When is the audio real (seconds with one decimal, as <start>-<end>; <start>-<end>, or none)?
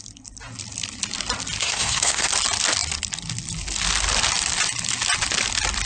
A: 0.0-1.6; 2.3-5.9